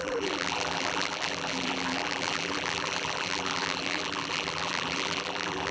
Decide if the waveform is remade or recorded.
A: remade